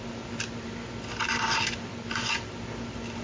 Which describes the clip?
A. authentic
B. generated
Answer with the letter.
A